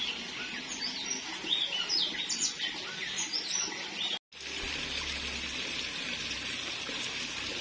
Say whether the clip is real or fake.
real